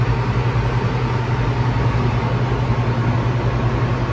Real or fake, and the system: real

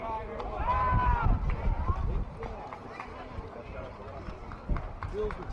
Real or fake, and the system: real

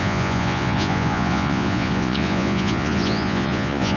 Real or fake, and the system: fake, vocoder, Vocos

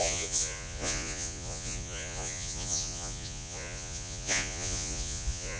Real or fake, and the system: fake, vocoder, Vocos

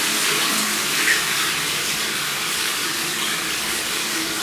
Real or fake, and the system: fake, codec, DAC